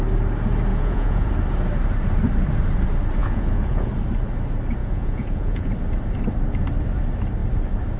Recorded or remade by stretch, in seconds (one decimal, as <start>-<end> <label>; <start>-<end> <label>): 0.0-0.7 recorded; 0.7-1.3 remade; 1.3-3.2 recorded; 3.2-3.9 remade; 3.9-4.8 recorded; 4.8-5.7 remade; 5.7-8.0 recorded